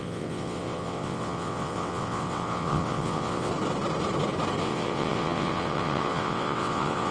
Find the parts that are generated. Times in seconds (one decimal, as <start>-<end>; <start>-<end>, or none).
0.0-3.5; 4.6-7.1